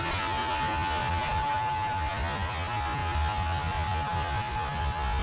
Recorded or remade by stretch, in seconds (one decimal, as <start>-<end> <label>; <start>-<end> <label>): 0.0-5.2 recorded